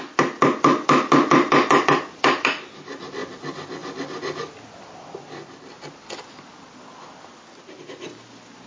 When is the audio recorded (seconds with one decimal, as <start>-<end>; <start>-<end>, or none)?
0.0-8.7

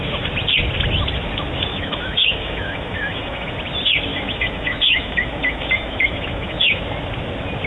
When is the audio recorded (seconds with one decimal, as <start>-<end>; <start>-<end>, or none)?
0.0-1.7; 3.5-4.1; 6.8-7.7

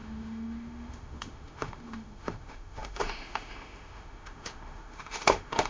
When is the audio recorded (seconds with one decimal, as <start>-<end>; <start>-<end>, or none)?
none